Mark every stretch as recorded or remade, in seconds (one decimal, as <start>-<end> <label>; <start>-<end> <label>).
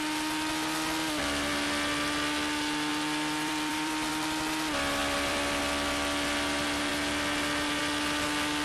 0.0-2.9 recorded; 2.9-4.1 remade; 4.1-5.0 recorded; 5.0-5.6 remade; 5.6-8.6 recorded